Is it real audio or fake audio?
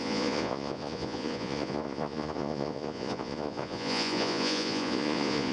fake